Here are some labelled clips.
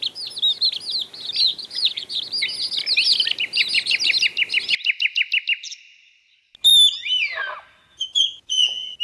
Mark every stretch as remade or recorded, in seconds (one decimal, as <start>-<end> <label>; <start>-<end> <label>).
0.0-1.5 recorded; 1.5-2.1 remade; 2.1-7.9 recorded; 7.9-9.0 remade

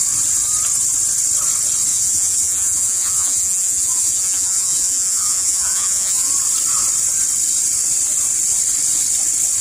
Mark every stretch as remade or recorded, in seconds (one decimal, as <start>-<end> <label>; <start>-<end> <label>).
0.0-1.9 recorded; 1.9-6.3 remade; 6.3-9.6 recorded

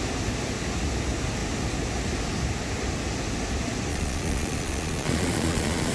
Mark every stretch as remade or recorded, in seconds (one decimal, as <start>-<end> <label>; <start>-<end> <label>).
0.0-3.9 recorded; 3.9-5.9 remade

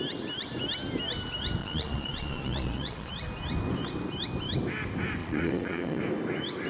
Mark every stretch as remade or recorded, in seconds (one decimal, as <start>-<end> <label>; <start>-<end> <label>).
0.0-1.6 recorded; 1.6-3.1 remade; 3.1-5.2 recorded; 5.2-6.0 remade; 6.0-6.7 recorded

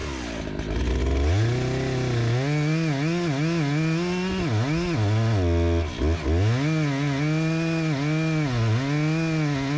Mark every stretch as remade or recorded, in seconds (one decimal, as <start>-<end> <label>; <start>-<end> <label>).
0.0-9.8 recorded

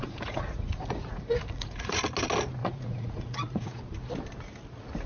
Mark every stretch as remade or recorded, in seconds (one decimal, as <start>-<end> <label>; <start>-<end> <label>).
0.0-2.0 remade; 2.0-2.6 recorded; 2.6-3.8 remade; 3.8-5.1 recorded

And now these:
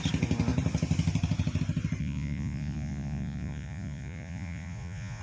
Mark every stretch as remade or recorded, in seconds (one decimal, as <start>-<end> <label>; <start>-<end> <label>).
0.0-2.0 recorded; 2.0-5.2 remade